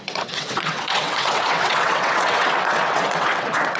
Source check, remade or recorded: remade